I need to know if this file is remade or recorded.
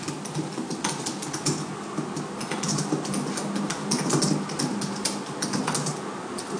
recorded